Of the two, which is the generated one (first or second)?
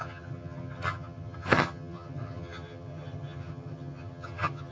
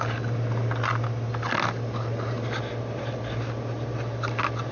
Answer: first